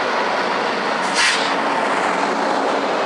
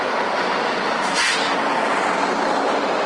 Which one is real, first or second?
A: first